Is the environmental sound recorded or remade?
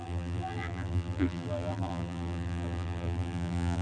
remade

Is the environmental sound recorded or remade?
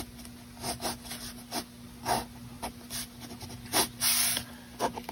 recorded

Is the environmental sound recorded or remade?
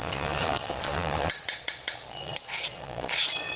remade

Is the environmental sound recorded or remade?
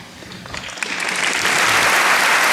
recorded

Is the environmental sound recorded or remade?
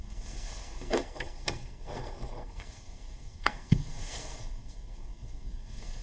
remade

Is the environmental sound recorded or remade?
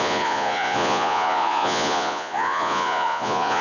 remade